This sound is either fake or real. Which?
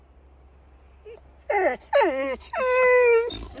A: real